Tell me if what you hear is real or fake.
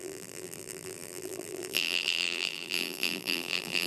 fake